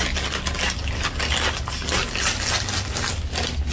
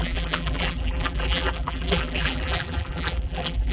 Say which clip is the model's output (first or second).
second